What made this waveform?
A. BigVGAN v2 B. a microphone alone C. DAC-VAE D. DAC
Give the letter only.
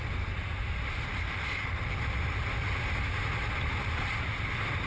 A